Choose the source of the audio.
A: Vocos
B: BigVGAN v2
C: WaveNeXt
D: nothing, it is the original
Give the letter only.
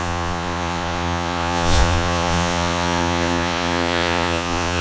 A